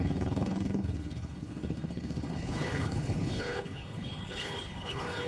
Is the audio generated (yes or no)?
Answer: yes